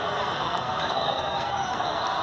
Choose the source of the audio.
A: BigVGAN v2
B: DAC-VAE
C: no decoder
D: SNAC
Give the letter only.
D